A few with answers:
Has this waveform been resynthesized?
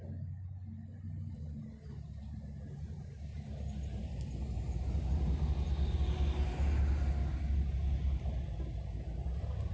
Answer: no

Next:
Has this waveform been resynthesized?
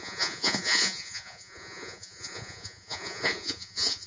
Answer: yes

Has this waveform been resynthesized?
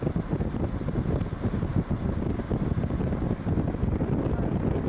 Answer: no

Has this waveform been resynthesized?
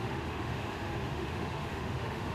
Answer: yes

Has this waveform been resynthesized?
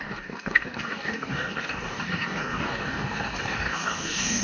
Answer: yes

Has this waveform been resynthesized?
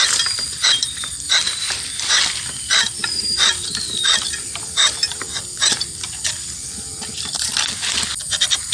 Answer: yes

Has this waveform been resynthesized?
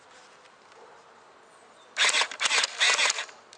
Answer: no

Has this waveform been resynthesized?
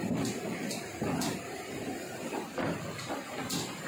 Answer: no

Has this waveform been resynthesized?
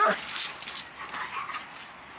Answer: no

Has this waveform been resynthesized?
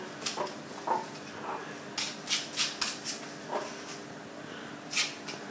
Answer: no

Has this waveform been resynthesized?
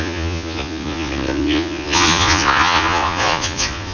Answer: yes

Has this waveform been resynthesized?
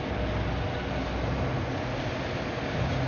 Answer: no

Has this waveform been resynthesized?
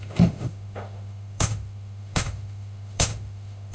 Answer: yes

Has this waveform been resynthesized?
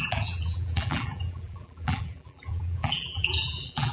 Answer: yes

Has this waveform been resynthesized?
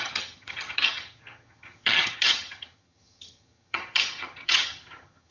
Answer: yes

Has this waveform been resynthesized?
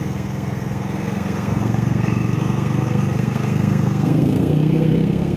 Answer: yes